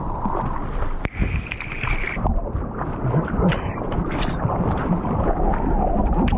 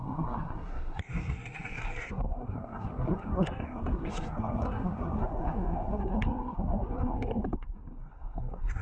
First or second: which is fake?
second